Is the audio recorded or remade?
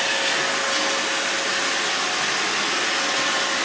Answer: recorded